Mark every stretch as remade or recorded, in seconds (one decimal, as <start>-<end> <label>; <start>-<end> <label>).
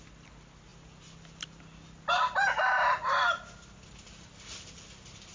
0.0-5.3 recorded